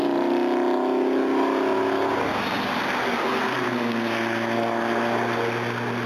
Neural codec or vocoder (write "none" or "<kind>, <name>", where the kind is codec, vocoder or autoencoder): none